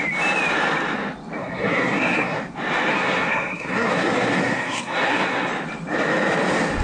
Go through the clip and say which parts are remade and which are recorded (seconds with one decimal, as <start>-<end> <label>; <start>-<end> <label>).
0.0-1.4 recorded; 1.4-2.4 remade; 2.4-2.9 recorded; 2.9-5.5 remade; 5.5-6.8 recorded